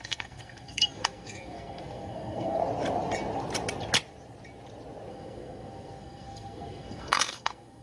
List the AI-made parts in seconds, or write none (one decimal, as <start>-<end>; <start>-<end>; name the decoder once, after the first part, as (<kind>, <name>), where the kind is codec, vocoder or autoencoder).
0.0-2.6 (codec, SNAC); 5.1-7.8